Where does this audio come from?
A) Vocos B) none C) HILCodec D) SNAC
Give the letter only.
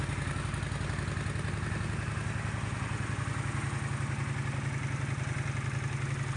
B